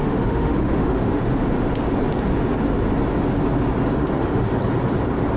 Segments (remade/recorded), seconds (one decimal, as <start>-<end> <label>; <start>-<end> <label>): 0.0-1.4 remade; 1.4-3.9 recorded; 3.9-4.5 remade; 4.5-5.4 recorded